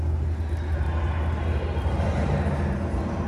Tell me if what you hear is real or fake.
real